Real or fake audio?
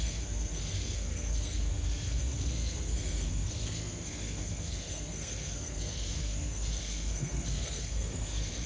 fake